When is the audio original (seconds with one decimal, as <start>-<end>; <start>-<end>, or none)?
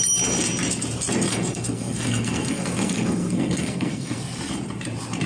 0.0-1.3; 4.2-5.3